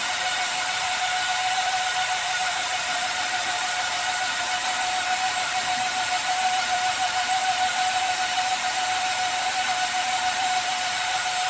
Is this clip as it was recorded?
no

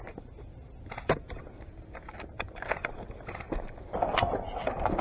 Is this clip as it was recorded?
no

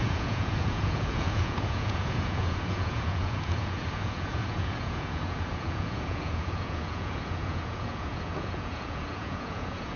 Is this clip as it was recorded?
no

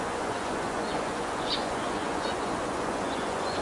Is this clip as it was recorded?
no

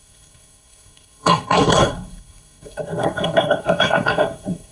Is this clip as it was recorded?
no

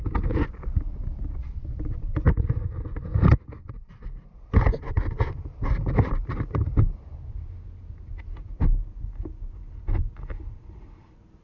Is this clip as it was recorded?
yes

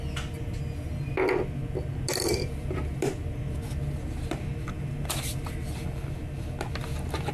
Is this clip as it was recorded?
yes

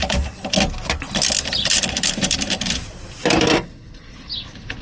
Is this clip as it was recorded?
yes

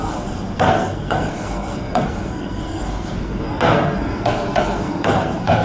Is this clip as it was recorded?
no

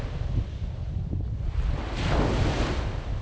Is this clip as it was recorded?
yes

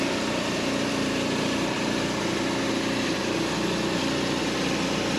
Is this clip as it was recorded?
no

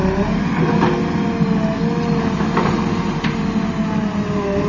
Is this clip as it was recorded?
yes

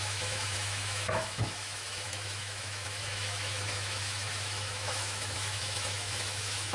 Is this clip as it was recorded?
no